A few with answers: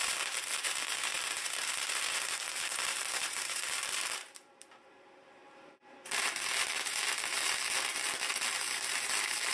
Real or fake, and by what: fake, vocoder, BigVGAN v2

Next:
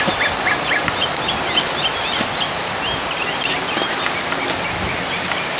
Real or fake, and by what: real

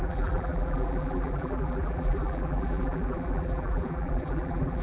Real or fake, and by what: fake, vocoder, BigVGAN v2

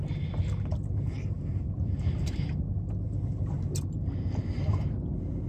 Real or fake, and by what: real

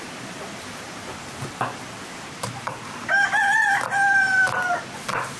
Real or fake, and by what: fake, vocoder, BigVGAN v2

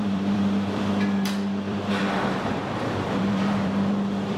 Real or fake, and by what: fake, vocoder, BigVGAN v2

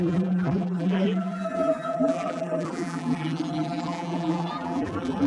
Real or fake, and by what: fake, vocoder, BigVGAN v2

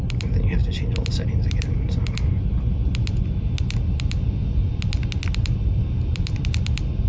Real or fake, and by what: real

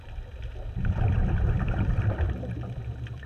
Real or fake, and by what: fake, vocoder, BigVGAN v2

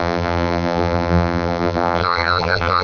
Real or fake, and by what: fake, vocoder, BigVGAN v2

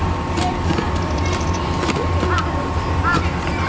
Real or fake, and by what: real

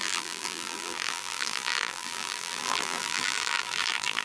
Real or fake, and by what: fake, vocoder, BigVGAN v2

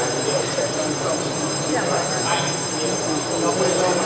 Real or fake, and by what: real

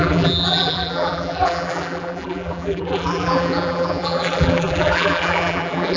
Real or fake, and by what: fake, vocoder, BigVGAN v2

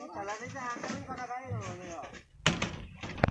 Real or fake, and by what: real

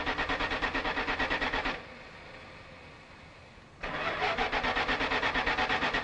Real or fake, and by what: real